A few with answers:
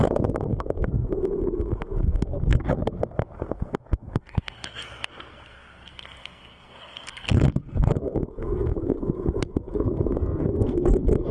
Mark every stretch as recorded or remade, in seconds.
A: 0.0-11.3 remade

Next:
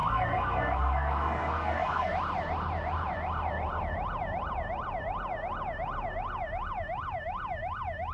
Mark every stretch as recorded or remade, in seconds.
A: 0.0-2.1 remade; 2.1-8.1 recorded

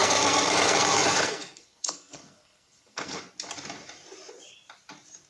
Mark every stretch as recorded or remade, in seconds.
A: 0.0-3.2 remade; 3.2-5.3 recorded

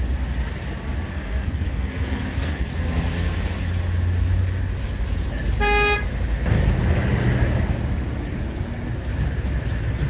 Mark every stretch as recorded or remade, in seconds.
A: 0.0-1.1 recorded; 1.1-2.7 remade; 2.7-10.1 recorded

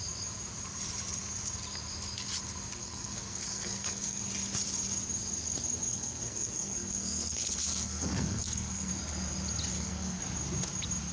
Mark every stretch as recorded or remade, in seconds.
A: 0.0-2.8 recorded; 2.8-4.2 remade; 4.2-5.9 recorded; 5.9-8.9 remade; 8.9-9.7 recorded; 9.7-10.2 remade; 10.2-11.1 recorded